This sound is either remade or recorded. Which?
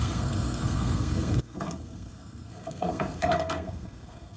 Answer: remade